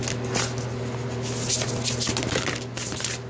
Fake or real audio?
real